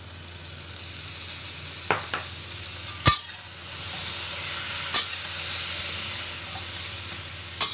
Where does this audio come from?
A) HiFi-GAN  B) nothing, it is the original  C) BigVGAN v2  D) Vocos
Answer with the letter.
B